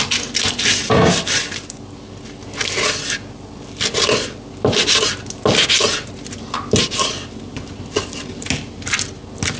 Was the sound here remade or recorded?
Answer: recorded